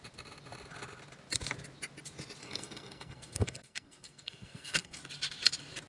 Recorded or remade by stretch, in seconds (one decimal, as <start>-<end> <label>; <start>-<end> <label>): 0.0-2.4 recorded; 2.4-5.0 remade; 5.0-5.9 recorded